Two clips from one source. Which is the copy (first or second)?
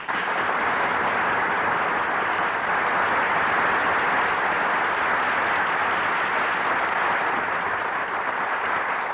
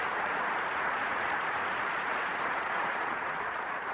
second